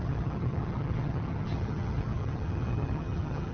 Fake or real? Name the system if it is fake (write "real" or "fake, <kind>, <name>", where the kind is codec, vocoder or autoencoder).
fake, vocoder, HiFi-GAN